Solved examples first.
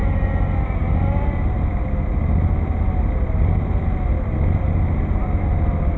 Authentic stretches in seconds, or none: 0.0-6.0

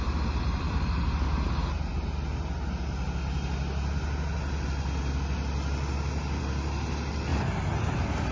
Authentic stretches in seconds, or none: 0.0-8.3

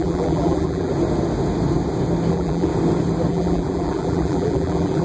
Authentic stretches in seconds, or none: 0.9-2.3; 2.7-3.3